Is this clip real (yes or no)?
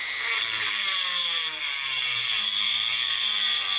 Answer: no